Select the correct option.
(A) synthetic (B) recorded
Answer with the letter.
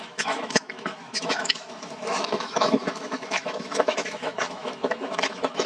A